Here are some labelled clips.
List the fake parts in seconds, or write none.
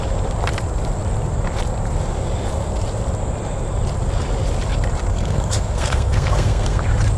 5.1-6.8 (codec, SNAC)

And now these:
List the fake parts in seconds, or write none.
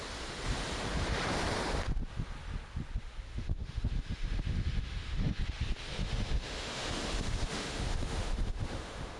3.3-5.4 (autoencoder, DAC-VAE); 6.0-9.2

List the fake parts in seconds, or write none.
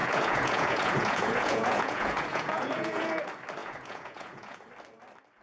0.0-3.2 (vocoder, Vocos); 3.6-4.7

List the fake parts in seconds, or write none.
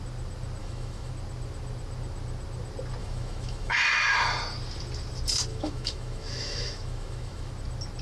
0.6-1.1 (autoencoder, DAC-VAE); 3.0-3.8; 5.5-7.5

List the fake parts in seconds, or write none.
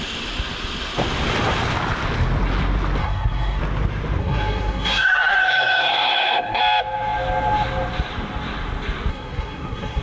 3.0-3.6 (codec, SNAC); 4.2-6.6; 9.1-10.0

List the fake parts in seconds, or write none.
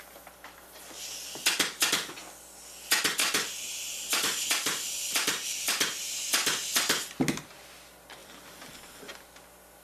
3.2-5.8 (vocoder, BigVGAN v2); 8.2-9.2